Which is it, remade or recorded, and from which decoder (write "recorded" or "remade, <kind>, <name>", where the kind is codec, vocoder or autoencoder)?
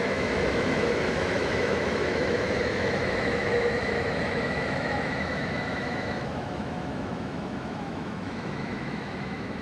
remade, autoencoder, DAC-VAE